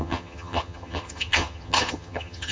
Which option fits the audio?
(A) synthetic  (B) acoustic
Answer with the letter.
A